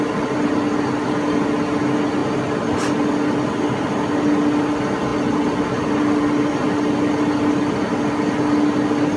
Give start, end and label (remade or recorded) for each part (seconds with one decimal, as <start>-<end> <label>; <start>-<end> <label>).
0.0-9.2 recorded